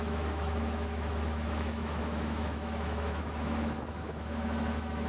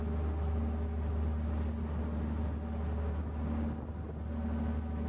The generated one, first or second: first